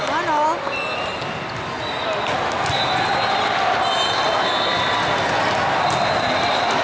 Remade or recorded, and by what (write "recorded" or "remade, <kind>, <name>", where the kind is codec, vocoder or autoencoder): recorded